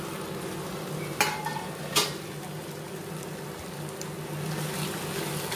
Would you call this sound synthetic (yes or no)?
no